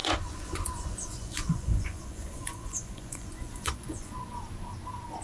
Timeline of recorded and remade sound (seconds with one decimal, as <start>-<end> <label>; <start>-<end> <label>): 0.0-4.3 remade; 4.3-5.2 recorded